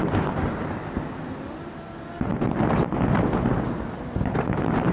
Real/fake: real